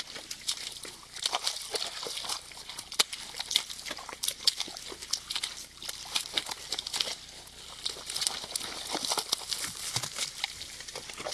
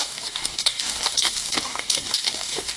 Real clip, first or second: first